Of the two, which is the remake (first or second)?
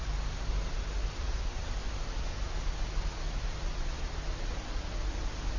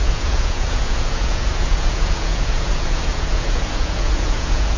second